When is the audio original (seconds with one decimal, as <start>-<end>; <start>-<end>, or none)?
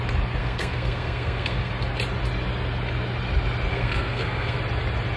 0.0-0.4; 1.7-3.7; 4.6-5.2